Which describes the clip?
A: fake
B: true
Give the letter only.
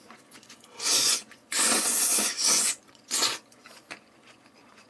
A